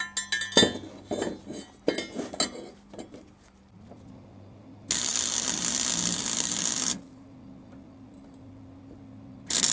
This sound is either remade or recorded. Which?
recorded